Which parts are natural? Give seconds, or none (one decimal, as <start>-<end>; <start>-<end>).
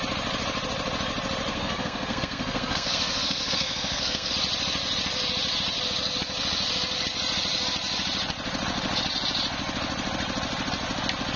0.0-1.5; 4.3-11.4